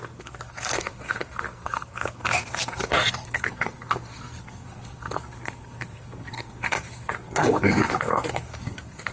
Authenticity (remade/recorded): remade